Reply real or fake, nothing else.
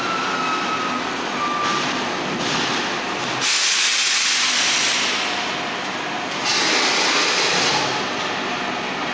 real